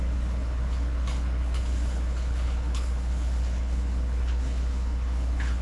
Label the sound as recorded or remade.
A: remade